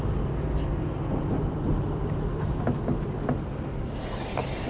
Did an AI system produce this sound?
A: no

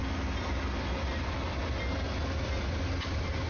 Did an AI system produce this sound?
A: no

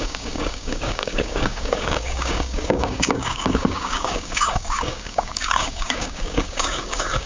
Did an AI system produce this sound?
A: yes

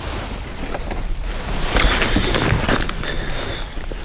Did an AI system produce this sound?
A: no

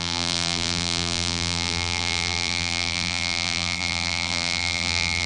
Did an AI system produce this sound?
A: yes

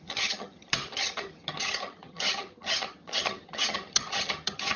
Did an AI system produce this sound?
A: yes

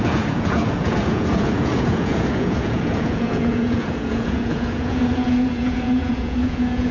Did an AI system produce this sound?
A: yes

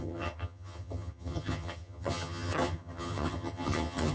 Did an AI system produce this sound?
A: yes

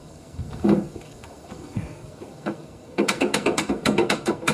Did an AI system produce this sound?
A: yes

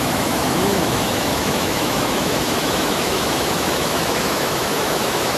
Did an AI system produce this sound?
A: yes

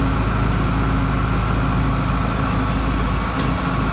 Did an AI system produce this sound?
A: no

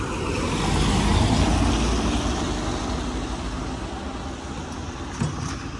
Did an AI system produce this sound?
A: no